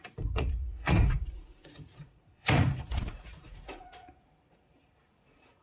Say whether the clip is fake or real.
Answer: fake